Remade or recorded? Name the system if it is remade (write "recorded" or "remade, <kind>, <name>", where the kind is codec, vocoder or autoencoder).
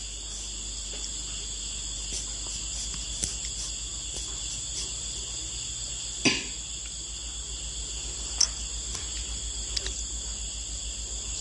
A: recorded